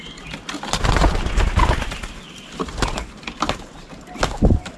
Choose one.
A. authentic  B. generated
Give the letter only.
A